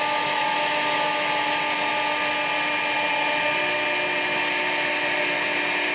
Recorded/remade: recorded